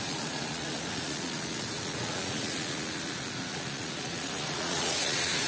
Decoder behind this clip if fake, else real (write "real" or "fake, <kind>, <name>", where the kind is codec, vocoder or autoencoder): fake, vocoder, Vocos